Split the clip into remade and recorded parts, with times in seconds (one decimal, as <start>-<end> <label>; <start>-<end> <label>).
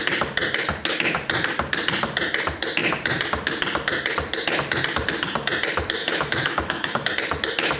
0.0-6.0 recorded; 6.0-7.1 remade; 7.1-7.8 recorded